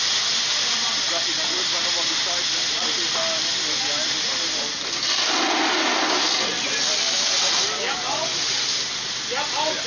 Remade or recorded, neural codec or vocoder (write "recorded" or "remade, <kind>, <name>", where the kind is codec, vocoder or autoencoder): recorded